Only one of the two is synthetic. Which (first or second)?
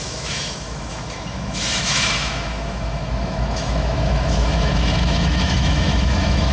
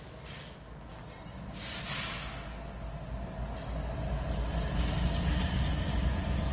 first